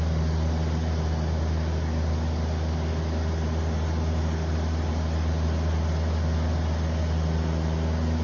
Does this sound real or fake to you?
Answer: real